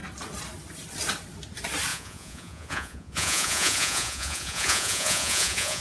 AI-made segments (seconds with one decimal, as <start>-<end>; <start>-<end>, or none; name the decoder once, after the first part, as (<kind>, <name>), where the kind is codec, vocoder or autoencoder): 1.9-5.8 (vocoder, Vocos)